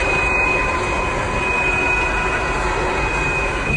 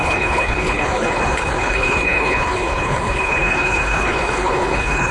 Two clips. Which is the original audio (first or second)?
first